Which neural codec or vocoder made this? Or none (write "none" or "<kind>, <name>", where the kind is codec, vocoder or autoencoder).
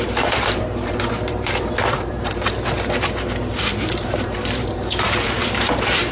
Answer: vocoder, BigVGAN v2